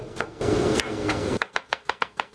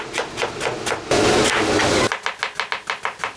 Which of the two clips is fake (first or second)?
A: first